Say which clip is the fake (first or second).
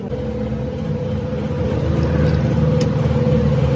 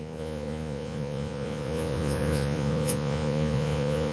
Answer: second